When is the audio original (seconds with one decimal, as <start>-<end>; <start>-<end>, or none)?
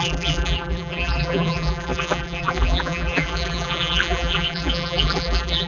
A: none